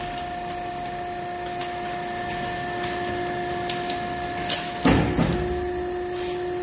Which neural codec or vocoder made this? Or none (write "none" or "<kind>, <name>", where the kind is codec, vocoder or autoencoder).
none